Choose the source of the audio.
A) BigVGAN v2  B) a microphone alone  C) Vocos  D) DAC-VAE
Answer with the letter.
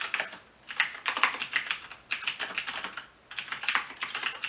B